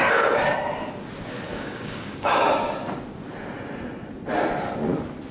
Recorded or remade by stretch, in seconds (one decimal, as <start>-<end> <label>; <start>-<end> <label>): 0.0-1.5 recorded; 1.5-2.4 remade; 2.4-5.3 recorded